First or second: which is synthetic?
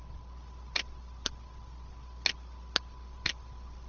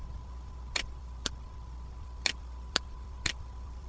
second